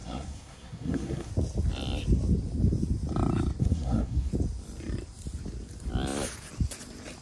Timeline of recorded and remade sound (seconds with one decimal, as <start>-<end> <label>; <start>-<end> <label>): 0.0-1.3 remade; 1.3-3.6 recorded; 3.6-4.3 remade; 4.3-7.2 recorded